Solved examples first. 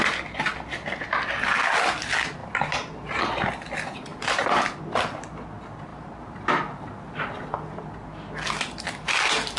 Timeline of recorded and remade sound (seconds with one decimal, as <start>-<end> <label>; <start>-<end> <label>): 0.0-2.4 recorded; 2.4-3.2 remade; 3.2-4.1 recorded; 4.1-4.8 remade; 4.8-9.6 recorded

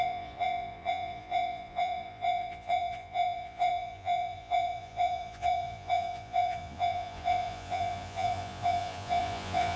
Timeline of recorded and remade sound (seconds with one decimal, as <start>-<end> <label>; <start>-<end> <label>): 0.0-9.8 remade

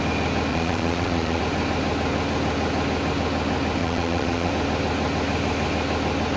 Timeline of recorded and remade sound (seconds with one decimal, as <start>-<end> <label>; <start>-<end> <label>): 0.0-0.5 recorded; 0.5-1.4 remade; 1.4-3.8 recorded; 3.8-4.5 remade; 4.5-6.4 recorded

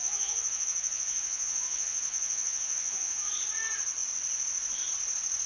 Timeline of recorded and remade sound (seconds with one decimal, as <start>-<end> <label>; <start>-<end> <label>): 0.0-3.3 remade; 3.3-5.5 recorded

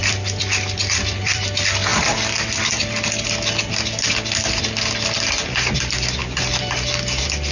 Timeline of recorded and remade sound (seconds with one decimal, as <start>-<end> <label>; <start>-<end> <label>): 0.0-1.4 remade; 1.4-6.2 recorded; 6.2-6.7 remade; 6.7-7.5 recorded

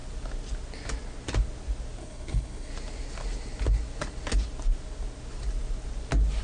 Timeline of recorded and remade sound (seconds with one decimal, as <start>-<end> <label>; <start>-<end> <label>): 0.0-2.0 recorded; 2.0-2.7 remade; 2.7-6.4 recorded